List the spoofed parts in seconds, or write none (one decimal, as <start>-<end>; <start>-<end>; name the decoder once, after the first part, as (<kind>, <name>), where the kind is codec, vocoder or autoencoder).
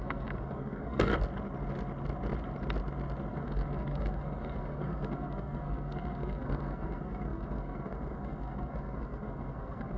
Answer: 0.0-1.1 (codec, SNAC); 3.3-10.0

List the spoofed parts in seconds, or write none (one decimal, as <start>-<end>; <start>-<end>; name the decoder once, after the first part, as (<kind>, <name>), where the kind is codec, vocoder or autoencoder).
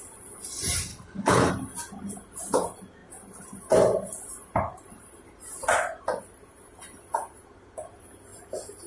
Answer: 0.9-1.5 (codec, HILCodec)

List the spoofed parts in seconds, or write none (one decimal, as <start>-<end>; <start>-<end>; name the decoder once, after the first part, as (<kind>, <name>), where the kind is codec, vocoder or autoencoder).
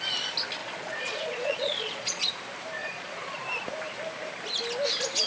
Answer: 0.6-2.3 (vocoder, Vocos); 2.8-3.4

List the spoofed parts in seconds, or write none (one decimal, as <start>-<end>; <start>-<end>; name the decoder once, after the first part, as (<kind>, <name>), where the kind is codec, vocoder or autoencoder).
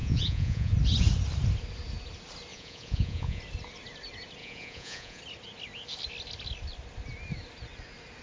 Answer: 0.0-0.7 (vocoder, Vocos); 2.5-3.4; 4.4-5.2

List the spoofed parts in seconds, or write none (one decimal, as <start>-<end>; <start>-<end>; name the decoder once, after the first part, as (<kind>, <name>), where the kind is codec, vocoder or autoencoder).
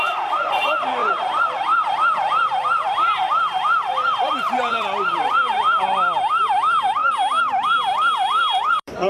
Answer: 0.0-7.0 (vocoder, BigVGAN v2); 8.7-9.1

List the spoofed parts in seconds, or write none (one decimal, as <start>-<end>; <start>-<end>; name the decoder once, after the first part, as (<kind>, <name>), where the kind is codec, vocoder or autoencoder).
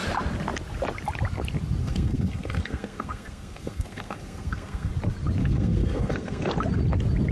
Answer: 1.8-4.9 (codec, SNAC); 5.4-6.5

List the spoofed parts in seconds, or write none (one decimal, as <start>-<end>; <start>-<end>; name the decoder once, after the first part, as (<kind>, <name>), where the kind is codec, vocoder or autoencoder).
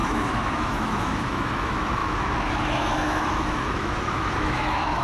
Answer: 0.0-5.0 (autoencoder, DAC-VAE)